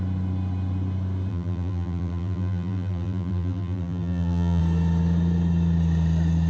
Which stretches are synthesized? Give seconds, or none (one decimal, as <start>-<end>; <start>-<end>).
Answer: 1.3-4.6